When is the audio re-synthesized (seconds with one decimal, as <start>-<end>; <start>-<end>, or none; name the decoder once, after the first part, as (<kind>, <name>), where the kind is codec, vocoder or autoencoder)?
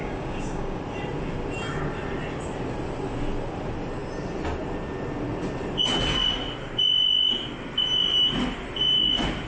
0.0-0.8 (codec, DAC)